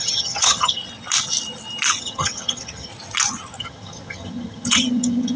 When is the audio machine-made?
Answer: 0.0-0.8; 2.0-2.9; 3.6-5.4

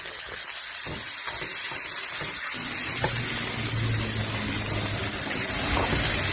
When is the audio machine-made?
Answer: none